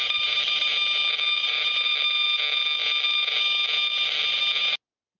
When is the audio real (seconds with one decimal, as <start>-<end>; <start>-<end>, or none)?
0.7-1.4; 1.9-5.2